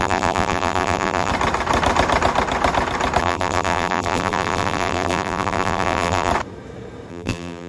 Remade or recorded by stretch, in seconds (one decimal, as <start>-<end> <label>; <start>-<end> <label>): 0.0-1.3 remade; 1.3-3.2 recorded; 3.2-6.3 remade; 6.3-7.1 recorded; 7.1-7.7 remade